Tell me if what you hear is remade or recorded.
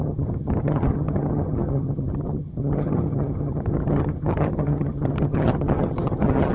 remade